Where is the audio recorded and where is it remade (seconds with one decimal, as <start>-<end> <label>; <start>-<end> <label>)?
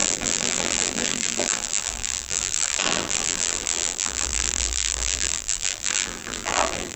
0.0-7.0 remade